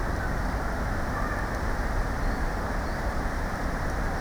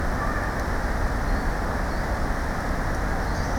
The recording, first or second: second